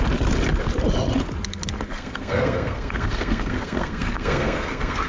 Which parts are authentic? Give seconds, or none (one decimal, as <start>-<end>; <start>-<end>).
0.0-1.9